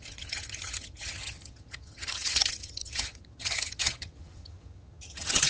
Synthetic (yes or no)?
yes